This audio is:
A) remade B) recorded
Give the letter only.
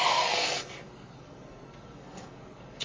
A